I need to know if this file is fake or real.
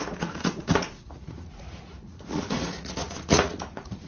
fake